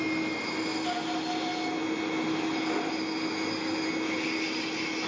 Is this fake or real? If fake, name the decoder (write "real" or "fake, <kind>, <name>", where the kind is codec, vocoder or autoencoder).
real